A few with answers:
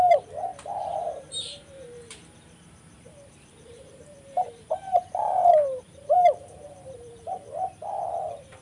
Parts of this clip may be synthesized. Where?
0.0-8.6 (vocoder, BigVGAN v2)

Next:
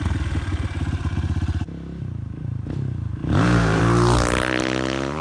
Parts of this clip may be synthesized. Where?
0.5-1.4 (vocoder, BigVGAN v2); 3.2-3.8